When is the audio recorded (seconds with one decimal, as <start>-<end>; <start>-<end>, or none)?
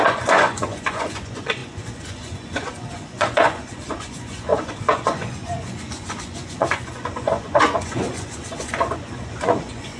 none